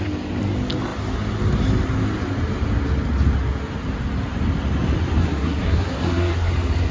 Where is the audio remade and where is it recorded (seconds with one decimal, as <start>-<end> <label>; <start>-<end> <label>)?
0.0-5.2 recorded; 5.2-6.5 remade; 6.5-6.9 recorded